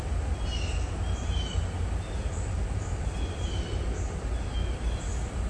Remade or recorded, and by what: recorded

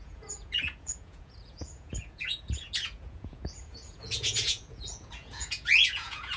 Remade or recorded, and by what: remade, vocoder, Vocos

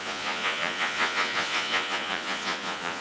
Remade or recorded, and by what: remade, vocoder, Vocos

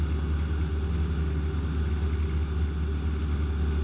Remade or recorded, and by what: recorded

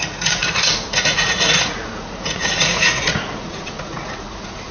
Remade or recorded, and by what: remade, vocoder, Vocos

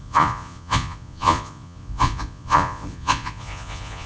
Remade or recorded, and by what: remade, vocoder, Vocos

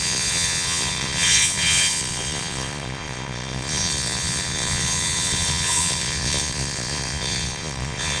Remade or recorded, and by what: remade, vocoder, Vocos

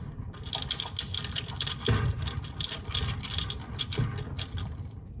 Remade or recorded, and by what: recorded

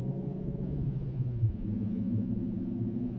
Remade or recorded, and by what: remade, vocoder, Vocos